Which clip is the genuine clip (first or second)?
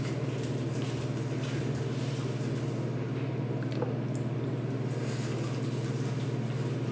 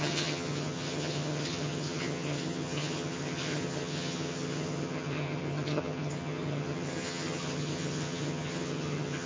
first